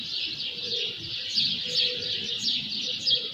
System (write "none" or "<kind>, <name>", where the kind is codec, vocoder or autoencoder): none